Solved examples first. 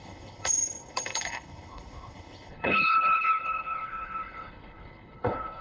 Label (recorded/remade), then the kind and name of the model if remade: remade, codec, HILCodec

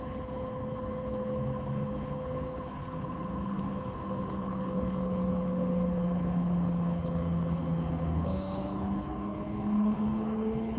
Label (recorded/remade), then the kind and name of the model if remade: remade, codec, HILCodec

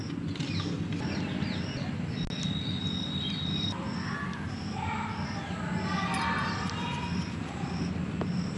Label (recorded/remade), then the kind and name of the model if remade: recorded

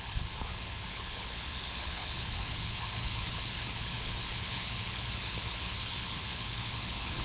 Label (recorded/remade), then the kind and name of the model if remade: remade, codec, HILCodec